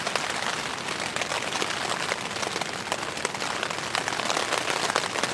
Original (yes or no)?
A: yes